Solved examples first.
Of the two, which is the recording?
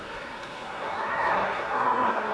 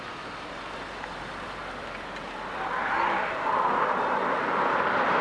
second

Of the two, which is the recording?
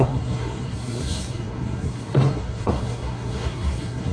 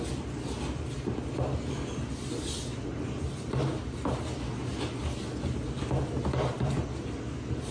second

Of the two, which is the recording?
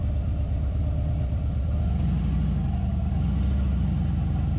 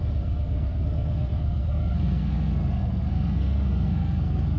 first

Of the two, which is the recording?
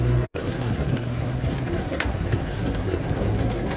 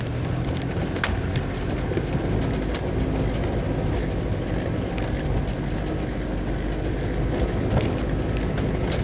second